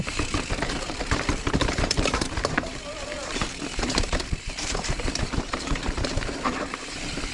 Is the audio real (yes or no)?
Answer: no